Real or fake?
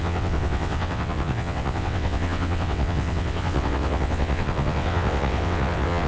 fake